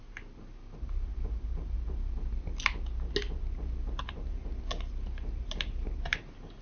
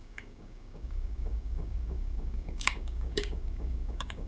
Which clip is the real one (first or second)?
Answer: first